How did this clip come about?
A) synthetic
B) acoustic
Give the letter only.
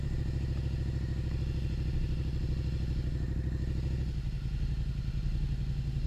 B